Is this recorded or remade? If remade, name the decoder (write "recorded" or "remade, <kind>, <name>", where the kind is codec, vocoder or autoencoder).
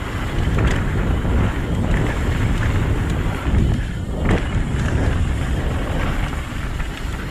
recorded